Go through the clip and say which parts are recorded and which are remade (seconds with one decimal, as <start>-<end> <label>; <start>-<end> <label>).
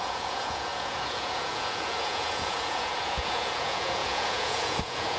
0.0-5.2 remade